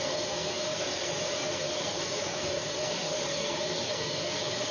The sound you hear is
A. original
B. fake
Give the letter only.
B